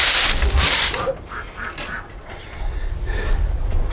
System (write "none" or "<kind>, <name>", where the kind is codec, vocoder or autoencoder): none